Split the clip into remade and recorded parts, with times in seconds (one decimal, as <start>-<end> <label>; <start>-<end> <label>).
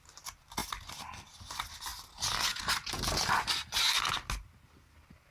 0.0-5.3 recorded